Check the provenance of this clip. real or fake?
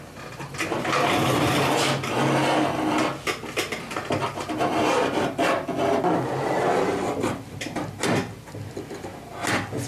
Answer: real